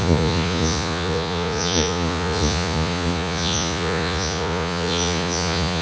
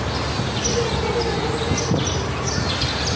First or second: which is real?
second